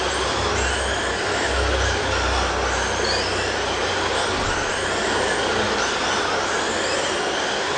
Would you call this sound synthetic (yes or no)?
no